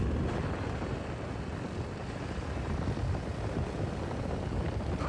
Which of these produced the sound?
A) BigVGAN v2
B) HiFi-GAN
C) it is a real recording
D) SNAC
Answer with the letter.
C